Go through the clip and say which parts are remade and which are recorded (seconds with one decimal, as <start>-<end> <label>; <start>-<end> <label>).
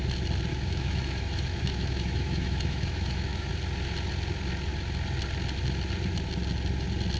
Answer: 0.0-0.5 recorded; 0.5-3.5 remade; 3.5-7.2 recorded